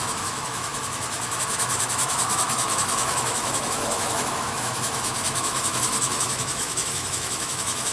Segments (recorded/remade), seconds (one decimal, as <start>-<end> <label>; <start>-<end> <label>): 0.0-7.9 remade